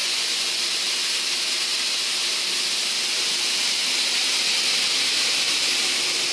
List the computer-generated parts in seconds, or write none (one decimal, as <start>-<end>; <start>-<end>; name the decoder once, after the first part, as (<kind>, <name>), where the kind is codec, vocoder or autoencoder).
0.0-0.6 (vocoder, Vocos)

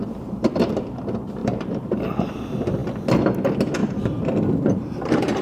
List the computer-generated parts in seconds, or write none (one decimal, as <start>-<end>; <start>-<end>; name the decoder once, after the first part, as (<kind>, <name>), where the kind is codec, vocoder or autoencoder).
0.0-0.7 (vocoder, BigVGAN v2); 1.4-2.0; 3.8-5.4